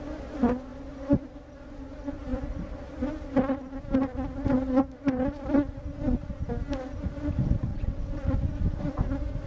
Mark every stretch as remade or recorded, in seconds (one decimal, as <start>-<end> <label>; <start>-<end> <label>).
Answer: 0.0-7.7 recorded; 7.7-8.3 remade; 8.3-9.5 recorded